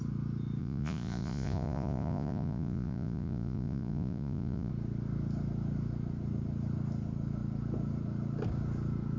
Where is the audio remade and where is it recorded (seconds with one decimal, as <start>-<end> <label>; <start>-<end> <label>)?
0.0-0.6 recorded; 0.6-4.7 remade; 4.7-9.2 recorded